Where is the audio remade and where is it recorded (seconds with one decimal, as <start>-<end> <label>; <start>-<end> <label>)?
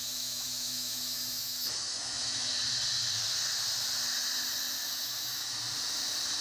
0.0-2.5 remade; 2.5-4.8 recorded; 4.8-5.6 remade; 5.6-6.4 recorded